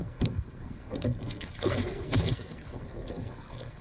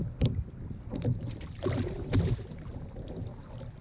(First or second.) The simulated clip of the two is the first